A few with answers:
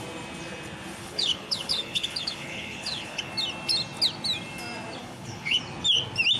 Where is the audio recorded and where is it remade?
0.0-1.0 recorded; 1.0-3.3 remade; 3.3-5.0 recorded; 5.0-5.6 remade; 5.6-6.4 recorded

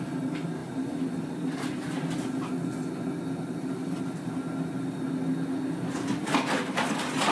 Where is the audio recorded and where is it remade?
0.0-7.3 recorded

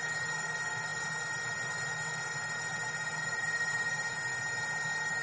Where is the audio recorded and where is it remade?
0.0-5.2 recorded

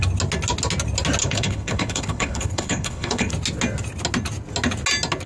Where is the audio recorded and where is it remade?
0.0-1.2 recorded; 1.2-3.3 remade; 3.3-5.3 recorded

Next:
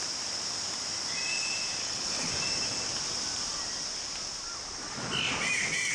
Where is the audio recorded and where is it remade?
0.0-1.8 recorded; 1.8-2.3 remade; 2.3-5.9 recorded